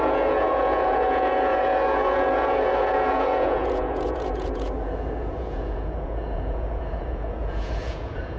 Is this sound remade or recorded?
remade